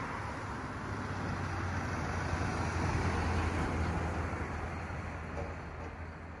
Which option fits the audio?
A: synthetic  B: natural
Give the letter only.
B